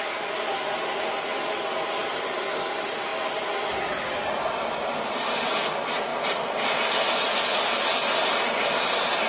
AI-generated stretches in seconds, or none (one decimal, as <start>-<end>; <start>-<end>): none